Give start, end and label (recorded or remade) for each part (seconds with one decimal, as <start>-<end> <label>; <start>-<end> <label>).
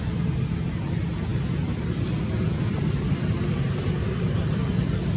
0.0-5.2 recorded